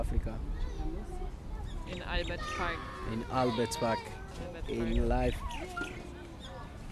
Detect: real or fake real